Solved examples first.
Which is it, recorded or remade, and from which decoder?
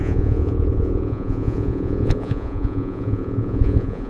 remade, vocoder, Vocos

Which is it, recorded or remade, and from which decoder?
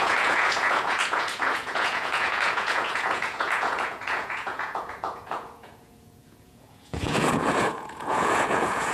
remade, vocoder, Vocos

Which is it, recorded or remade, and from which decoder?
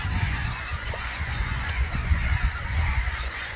remade, vocoder, Vocos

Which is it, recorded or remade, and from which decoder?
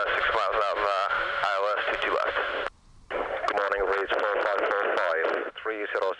recorded